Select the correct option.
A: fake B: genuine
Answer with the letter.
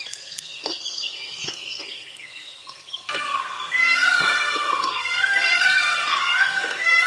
A